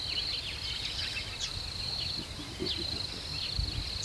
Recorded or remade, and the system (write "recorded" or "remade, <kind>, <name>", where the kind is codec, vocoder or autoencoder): recorded